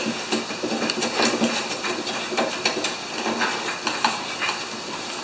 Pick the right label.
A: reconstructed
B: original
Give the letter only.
B